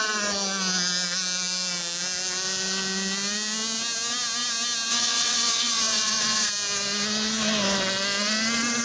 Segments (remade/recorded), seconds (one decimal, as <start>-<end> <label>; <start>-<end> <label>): 0.0-4.9 recorded; 4.9-6.5 remade; 6.5-8.8 recorded

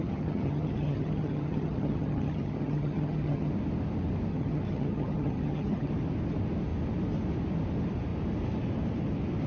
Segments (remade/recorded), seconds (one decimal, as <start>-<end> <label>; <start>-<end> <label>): 0.0-3.5 remade; 3.5-4.3 recorded; 4.3-5.9 remade; 5.9-9.5 recorded

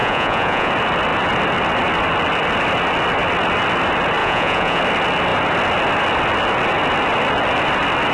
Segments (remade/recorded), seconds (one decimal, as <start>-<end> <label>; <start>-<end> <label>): 0.0-0.7 remade; 0.7-4.2 recorded; 4.2-4.8 remade; 4.8-8.1 recorded

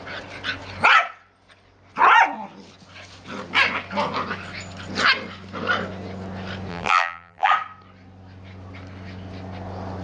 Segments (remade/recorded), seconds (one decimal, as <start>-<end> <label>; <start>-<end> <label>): 0.0-6.7 recorded; 6.7-7.5 remade; 7.5-10.0 recorded

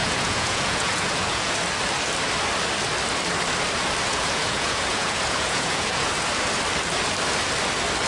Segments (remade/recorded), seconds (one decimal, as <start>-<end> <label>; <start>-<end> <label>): 0.0-1.5 remade; 1.5-4.1 recorded; 4.1-6.1 remade; 6.1-8.1 recorded

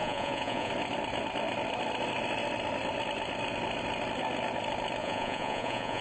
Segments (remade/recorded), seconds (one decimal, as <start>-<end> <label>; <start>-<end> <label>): 0.0-0.7 remade; 0.7-5.0 recorded; 5.0-6.0 remade

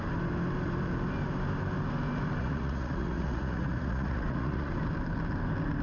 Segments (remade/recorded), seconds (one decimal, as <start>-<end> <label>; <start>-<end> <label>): 0.0-2.4 recorded; 2.4-4.7 remade; 4.7-5.8 recorded

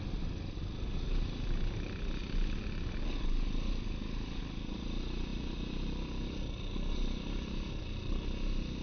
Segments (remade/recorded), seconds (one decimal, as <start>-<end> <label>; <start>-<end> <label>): 0.0-8.8 recorded